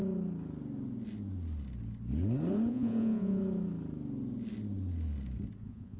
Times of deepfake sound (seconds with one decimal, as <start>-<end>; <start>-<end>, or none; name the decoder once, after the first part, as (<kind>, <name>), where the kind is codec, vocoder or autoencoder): 2.7-3.4 (vocoder, Vocos); 5.6-6.0